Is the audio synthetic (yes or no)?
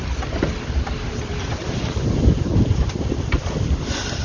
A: no